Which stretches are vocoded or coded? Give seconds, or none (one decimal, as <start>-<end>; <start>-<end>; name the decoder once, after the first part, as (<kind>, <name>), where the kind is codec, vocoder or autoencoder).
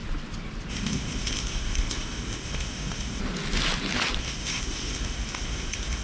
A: 0.7-3.2 (codec, ZipCodec); 4.2-6.0